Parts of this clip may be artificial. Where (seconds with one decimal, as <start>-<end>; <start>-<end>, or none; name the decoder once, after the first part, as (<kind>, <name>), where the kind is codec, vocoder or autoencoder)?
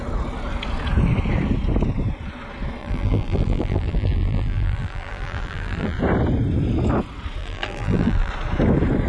2.8-6.0 (vocoder, BigVGAN v2); 7.4-8.3